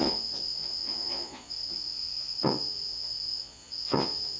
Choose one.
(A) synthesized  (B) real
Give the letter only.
A